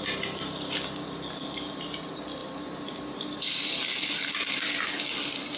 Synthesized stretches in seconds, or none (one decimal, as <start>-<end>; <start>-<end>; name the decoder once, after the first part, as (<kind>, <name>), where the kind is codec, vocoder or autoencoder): 2.4-3.7 (vocoder, BigVGAN v2)